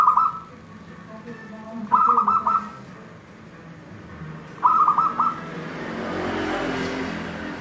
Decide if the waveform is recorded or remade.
recorded